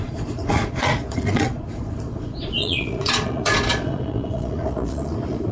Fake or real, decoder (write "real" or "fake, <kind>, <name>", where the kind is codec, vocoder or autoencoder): fake, vocoder, Vocos